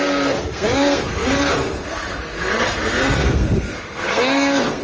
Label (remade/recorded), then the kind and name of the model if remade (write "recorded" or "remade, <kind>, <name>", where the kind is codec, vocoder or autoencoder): remade, codec, SNAC